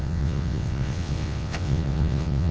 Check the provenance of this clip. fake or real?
fake